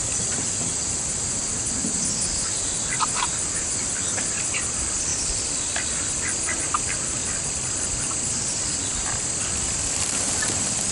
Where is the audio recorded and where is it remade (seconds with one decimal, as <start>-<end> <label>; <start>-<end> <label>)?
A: 0.0-5.1 remade; 5.1-6.4 recorded; 6.4-10.9 remade